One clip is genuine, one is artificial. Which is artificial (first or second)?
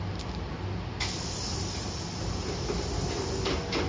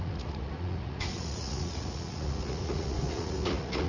second